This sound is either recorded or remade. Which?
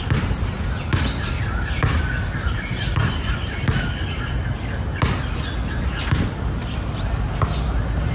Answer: recorded